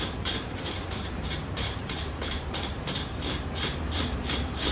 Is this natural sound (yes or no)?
no